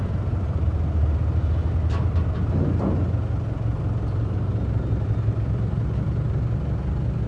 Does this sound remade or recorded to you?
recorded